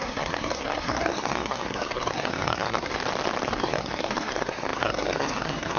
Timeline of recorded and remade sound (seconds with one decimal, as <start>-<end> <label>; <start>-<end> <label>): 0.0-3.0 remade; 3.0-3.5 recorded; 3.5-5.8 remade